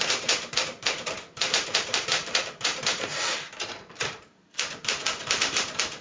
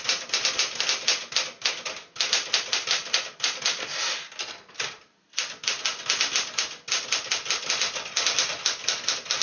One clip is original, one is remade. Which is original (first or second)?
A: second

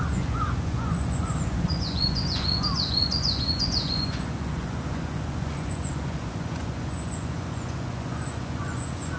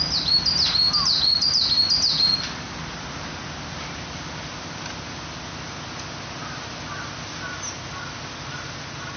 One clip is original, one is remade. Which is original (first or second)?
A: second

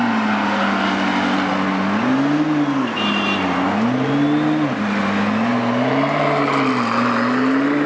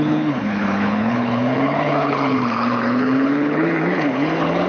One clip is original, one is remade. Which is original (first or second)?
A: first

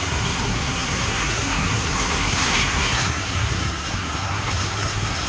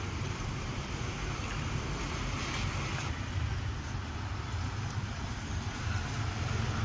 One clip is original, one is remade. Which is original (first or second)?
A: second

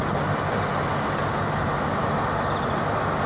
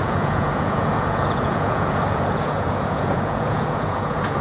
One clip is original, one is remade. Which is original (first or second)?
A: first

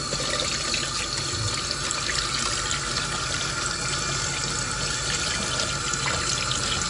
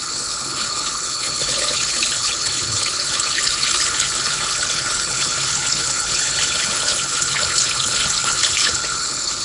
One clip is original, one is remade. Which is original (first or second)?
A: first